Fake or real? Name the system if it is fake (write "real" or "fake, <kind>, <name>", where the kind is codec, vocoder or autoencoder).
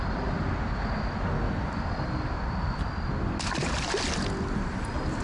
real